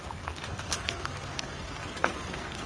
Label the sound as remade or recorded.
remade